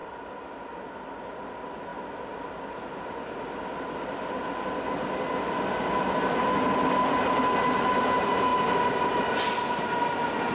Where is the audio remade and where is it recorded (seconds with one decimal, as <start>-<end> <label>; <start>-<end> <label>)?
0.0-0.9 remade; 0.9-10.5 recorded